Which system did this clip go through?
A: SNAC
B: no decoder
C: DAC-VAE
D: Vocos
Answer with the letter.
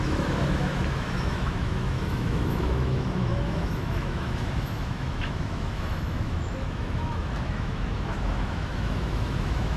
C